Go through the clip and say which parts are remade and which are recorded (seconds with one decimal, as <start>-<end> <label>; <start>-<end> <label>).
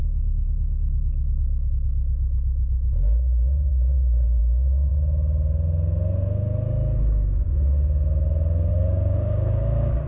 0.0-1.7 remade; 1.7-4.4 recorded; 4.4-4.9 remade; 4.9-8.7 recorded; 8.7-10.1 remade